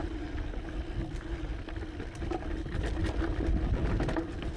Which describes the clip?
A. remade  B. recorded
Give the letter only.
B